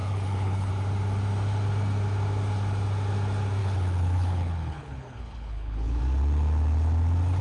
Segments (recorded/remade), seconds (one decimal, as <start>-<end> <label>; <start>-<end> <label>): 0.0-0.7 remade; 0.7-3.6 recorded; 3.6-6.0 remade; 6.0-7.4 recorded